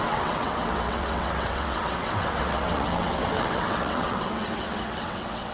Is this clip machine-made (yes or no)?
yes